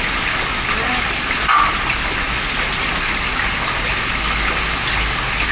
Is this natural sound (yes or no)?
yes